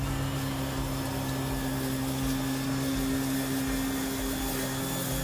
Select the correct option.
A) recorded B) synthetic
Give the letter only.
A